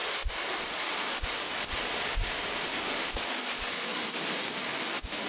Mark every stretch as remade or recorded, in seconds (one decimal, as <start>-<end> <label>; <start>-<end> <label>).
0.0-3.2 remade; 3.2-3.9 recorded; 3.9-4.5 remade; 4.5-5.3 recorded